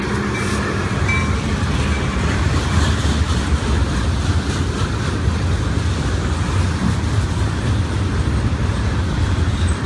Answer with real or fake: real